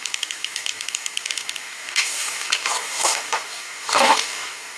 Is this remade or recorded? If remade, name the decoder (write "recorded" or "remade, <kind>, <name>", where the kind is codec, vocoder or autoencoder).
remade, codec, DAC